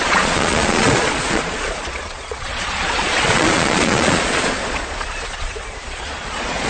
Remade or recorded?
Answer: remade